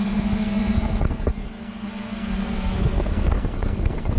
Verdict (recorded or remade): remade